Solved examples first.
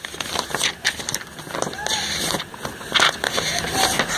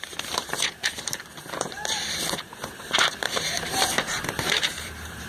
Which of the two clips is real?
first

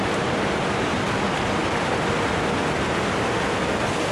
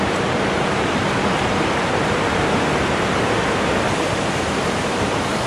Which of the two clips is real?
first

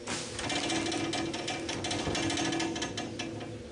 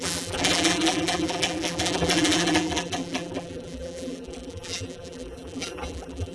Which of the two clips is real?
first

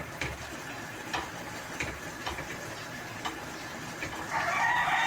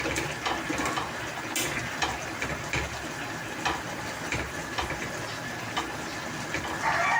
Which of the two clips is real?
second